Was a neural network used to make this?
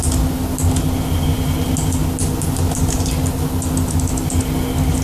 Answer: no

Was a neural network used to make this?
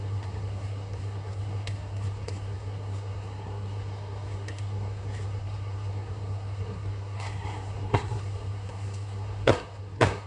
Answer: yes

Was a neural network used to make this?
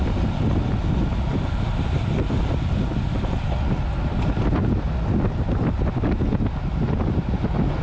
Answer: no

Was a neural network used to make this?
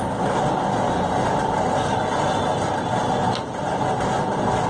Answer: no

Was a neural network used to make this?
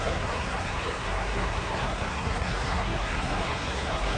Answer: yes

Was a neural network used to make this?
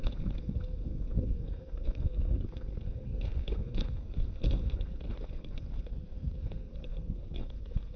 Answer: yes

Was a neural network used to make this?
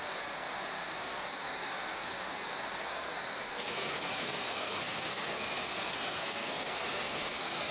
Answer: yes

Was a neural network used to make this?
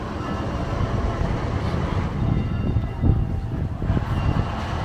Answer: no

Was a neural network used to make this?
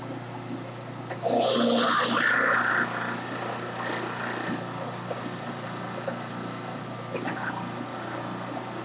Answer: no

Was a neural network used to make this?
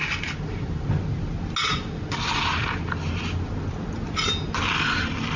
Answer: no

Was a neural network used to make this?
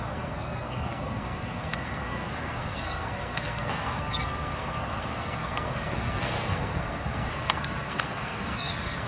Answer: yes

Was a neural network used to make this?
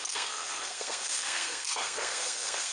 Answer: yes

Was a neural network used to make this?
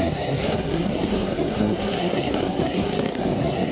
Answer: yes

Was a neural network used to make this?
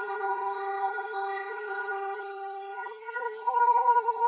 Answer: yes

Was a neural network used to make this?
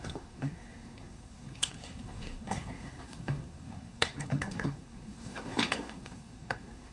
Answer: yes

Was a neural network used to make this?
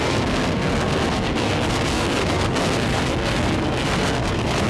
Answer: yes